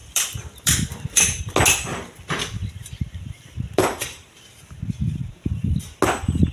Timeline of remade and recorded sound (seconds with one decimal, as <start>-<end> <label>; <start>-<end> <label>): 0.0-1.4 remade; 1.4-1.9 recorded; 1.9-5.8 remade; 5.8-6.5 recorded